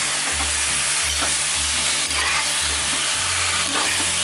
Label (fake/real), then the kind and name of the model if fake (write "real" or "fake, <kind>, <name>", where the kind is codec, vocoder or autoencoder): real